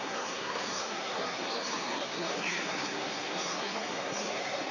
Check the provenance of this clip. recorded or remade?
remade